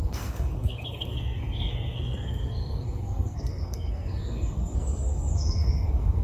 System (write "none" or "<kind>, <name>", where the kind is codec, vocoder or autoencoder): codec, SNAC